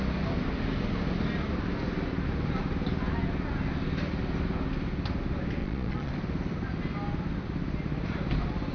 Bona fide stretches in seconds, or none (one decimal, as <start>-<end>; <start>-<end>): 0.0-5.6; 6.1-8.7